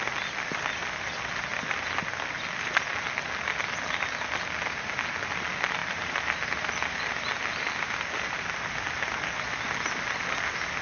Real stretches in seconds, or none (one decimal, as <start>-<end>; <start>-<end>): 0.0-10.8